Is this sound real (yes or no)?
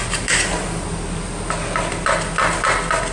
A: yes